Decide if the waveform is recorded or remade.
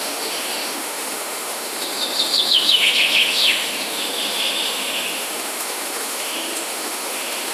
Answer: remade